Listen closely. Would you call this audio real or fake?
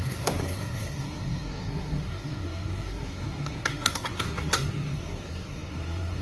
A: fake